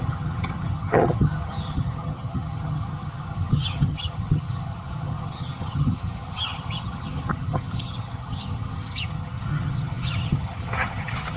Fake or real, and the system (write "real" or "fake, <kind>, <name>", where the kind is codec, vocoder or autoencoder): fake, vocoder, HiFi-GAN